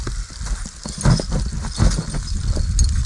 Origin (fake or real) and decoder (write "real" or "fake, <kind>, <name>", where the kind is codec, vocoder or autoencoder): real